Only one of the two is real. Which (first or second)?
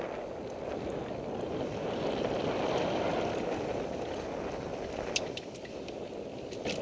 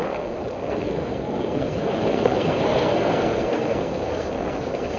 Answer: first